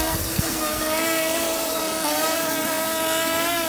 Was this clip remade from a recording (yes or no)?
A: yes